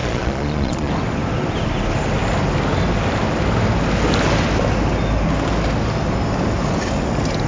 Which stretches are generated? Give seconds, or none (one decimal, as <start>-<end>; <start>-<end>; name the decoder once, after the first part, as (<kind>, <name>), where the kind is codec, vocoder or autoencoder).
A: 0.0-0.9 (vocoder, Vocos)